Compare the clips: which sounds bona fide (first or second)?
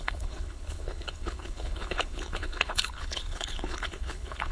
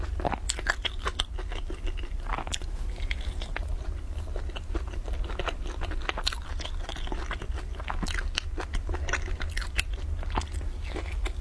second